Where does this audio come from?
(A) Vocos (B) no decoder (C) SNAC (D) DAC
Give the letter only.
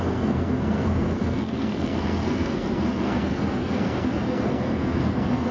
C